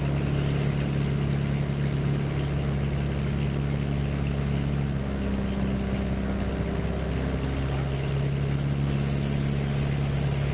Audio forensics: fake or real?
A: real